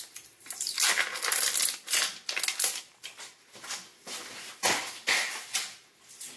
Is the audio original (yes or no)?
yes